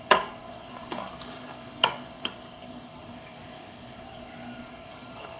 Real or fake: fake